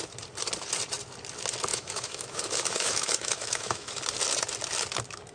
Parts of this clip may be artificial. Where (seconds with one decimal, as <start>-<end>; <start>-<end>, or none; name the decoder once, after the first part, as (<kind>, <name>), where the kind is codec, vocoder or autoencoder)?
1.7-4.0 (autoencoder, DAC-VAE)